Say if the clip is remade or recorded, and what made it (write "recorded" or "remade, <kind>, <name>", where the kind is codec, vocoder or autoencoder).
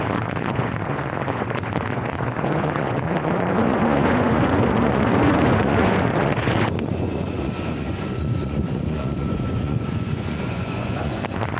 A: remade, vocoder, Vocos